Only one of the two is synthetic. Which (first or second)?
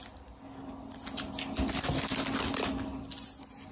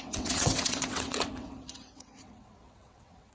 second